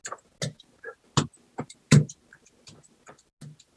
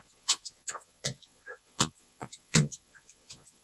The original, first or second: first